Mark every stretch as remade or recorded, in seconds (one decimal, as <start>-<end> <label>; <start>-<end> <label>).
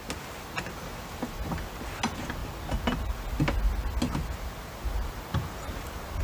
0.0-6.2 recorded